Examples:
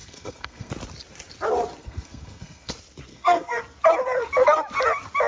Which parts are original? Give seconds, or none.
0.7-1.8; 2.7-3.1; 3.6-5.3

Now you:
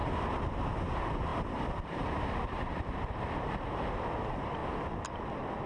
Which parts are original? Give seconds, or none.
0.0-0.9; 4.6-5.7

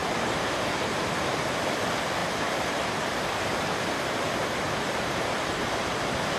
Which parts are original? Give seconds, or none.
1.6-2.2; 6.0-6.4

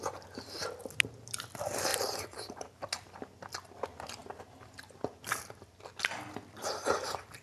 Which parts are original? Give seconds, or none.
0.0-1.9; 2.8-7.4